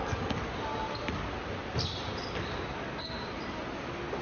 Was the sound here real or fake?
real